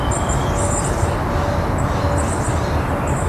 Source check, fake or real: real